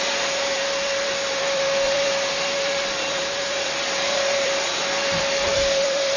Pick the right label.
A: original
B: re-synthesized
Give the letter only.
B